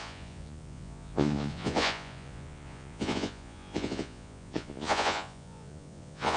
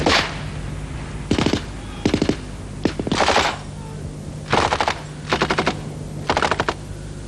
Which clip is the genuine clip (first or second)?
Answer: second